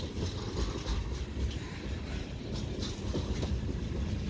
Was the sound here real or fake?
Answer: real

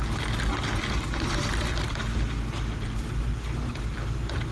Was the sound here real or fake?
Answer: real